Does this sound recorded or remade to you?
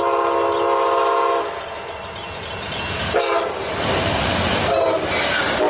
recorded